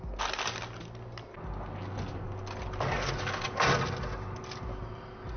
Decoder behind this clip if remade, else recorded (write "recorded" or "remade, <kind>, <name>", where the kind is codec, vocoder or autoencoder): recorded